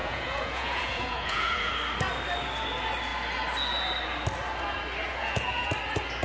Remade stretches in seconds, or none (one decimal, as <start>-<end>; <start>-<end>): 0.0-1.7; 5.1-5.7